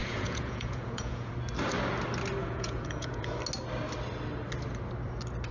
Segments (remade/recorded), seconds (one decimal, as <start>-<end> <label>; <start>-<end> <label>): 0.0-1.3 remade; 1.3-2.4 recorded; 2.4-3.3 remade; 3.3-5.5 recorded